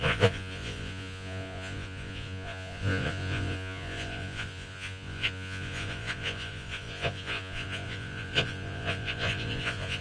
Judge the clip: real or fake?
fake